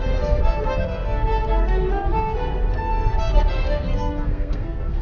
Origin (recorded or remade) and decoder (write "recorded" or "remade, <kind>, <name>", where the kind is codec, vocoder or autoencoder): remade, codec, SNAC